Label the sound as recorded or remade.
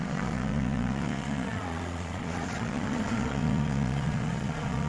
remade